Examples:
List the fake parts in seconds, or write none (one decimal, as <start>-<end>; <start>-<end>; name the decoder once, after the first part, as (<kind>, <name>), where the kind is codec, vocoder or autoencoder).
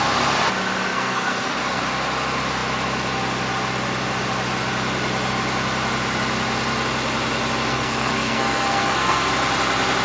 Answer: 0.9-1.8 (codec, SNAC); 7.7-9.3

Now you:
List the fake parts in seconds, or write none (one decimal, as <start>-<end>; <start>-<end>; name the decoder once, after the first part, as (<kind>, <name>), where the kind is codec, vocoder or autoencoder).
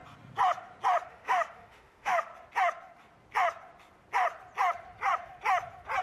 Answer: 1.1-2.3 (autoencoder, DAC-VAE)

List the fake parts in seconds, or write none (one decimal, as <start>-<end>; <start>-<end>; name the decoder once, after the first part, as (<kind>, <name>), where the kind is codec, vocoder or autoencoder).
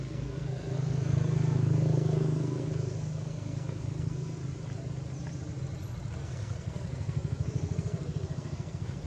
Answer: 0.0-4.4 (codec, SNAC); 6.2-9.1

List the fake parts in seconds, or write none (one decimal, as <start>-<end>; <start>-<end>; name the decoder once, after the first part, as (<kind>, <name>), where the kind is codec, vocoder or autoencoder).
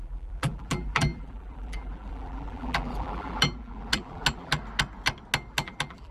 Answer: 0.0-4.6 (vocoder, BigVGAN v2); 5.5-6.1